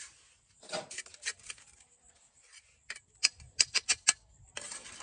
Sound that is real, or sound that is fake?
real